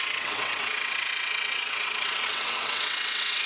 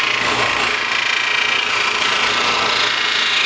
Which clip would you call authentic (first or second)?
second